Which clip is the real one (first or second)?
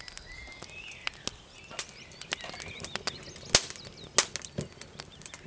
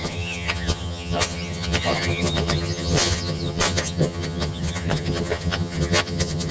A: first